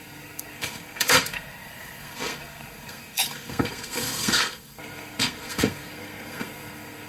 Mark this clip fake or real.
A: fake